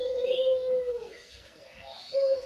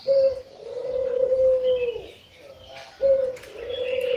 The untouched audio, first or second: second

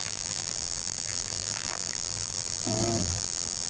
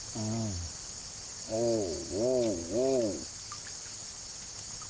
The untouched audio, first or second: second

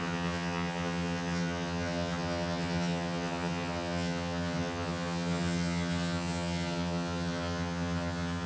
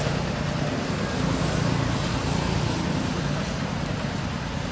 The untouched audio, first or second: second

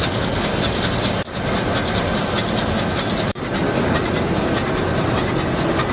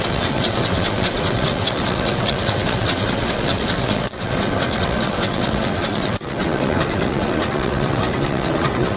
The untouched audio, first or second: first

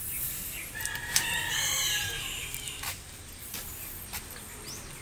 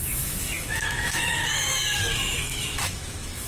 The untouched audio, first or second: first